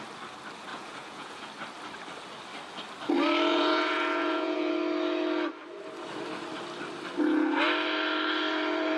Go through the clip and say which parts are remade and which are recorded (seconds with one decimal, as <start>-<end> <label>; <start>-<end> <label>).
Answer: 0.0-0.7 recorded; 0.7-1.5 remade; 1.5-3.5 recorded; 3.5-4.7 remade; 4.7-9.0 recorded